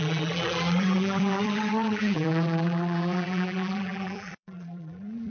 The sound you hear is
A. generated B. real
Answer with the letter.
A